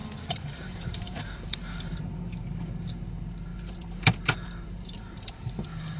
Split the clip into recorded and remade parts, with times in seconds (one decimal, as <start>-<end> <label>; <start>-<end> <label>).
0.0-2.0 remade; 2.0-3.5 recorded; 3.5-6.0 remade